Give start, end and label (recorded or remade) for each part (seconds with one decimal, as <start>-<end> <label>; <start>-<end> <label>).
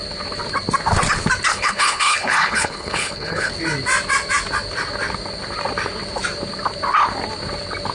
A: 0.0-1.5 recorded; 1.5-3.5 remade; 3.5-7.9 recorded